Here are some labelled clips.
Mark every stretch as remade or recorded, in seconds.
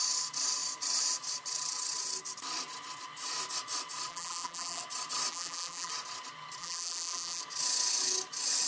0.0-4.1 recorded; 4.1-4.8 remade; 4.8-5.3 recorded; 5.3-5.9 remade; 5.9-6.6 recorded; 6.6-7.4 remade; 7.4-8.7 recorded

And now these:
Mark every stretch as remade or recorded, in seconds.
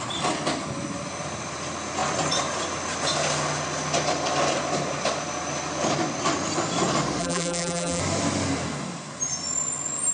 0.0-7.2 recorded; 7.2-8.0 remade; 8.0-10.1 recorded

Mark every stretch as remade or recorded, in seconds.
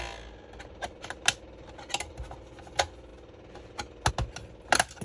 0.0-5.0 recorded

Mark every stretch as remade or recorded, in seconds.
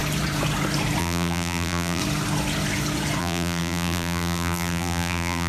0.0-1.0 recorded; 1.0-2.0 remade; 2.0-3.2 recorded; 3.2-5.5 remade